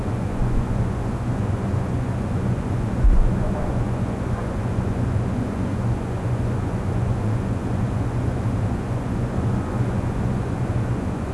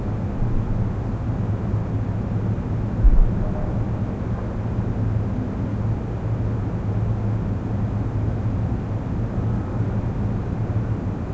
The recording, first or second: second